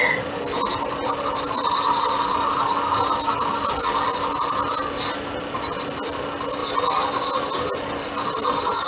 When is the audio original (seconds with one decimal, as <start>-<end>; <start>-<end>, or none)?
0.0-8.9

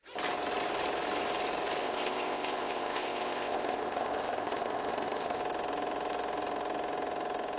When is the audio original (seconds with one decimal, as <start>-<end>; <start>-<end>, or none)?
0.0-1.8; 5.4-7.6

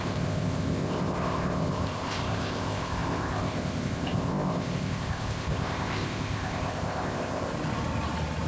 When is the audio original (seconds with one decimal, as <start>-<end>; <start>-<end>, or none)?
7.5-8.5

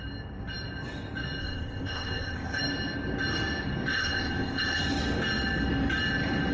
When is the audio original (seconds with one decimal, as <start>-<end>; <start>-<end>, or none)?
0.0-1.4; 2.6-3.9; 4.8-6.5